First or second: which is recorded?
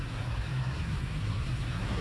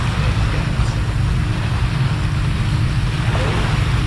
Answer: second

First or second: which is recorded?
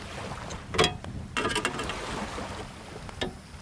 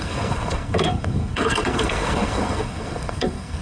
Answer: first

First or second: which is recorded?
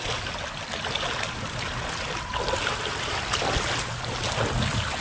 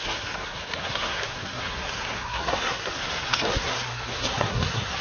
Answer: first